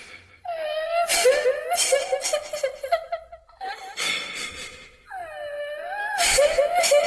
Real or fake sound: real